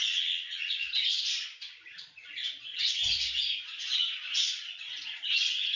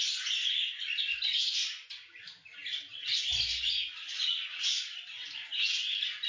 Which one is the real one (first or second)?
second